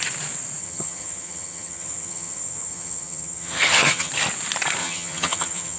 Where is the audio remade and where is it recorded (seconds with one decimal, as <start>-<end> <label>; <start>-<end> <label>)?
0.0-0.6 recorded; 0.6-4.1 remade; 4.1-4.8 recorded; 4.8-5.8 remade